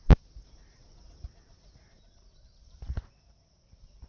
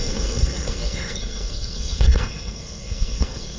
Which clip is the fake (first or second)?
second